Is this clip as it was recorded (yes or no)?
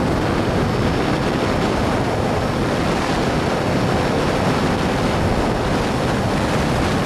yes